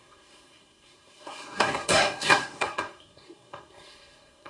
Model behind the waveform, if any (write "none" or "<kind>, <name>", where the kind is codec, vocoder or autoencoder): codec, SNAC